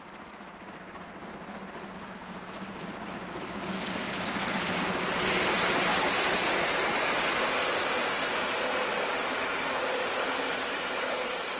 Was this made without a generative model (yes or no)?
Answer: yes